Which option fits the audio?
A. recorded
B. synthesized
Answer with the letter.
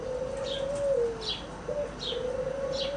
A